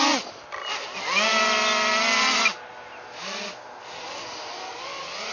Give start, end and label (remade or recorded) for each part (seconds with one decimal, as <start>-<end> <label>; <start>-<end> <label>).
0.0-5.3 recorded